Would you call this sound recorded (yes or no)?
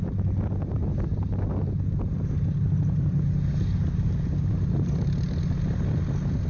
yes